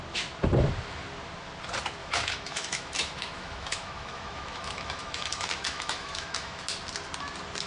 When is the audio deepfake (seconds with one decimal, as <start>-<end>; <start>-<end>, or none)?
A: 2.0-6.6

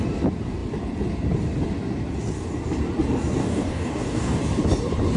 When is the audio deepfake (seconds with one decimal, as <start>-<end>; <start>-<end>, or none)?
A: 3.4-4.4

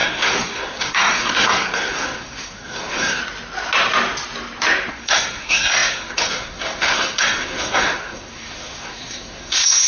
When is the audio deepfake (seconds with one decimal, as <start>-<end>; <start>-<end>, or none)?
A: 0.0-3.2; 4.9-9.9